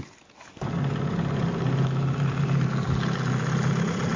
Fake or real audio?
real